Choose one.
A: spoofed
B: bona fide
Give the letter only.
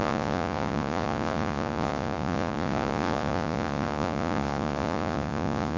A